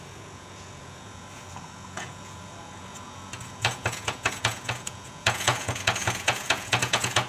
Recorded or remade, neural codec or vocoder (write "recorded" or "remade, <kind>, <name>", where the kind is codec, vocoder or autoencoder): remade, vocoder, Vocos